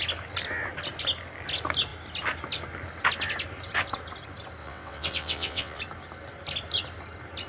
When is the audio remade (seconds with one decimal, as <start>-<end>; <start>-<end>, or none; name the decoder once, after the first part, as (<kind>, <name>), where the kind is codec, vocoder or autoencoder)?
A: 4.6-5.8 (vocoder, WaveNeXt)